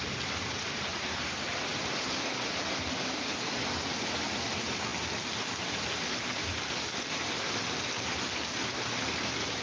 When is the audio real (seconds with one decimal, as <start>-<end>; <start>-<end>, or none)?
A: 0.0-9.6